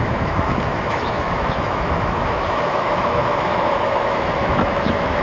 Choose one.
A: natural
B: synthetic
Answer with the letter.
B